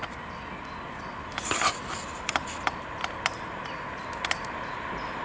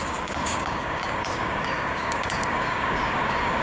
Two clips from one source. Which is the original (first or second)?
first